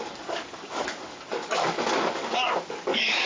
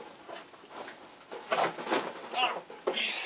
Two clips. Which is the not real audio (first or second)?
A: first